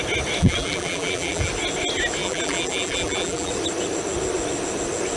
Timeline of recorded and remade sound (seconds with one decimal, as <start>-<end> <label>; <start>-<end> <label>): 0.0-0.4 recorded; 0.4-1.5 remade; 1.5-2.2 recorded; 2.2-3.5 remade; 3.5-5.2 recorded